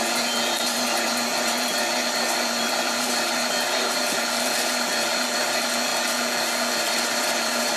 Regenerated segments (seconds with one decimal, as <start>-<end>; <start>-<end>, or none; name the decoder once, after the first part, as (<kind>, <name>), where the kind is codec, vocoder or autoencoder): 0.0-5.9 (vocoder, BigVGAN v2); 6.7-7.8